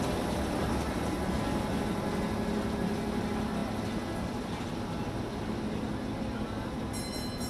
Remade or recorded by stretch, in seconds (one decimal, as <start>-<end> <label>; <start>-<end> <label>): 0.0-7.5 recorded